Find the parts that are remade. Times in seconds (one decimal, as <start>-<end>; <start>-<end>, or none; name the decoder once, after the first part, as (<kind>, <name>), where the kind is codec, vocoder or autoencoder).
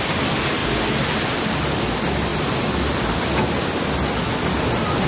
none